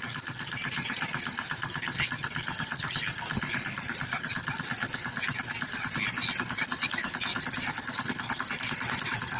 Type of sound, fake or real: real